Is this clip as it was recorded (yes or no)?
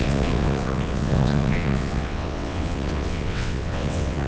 no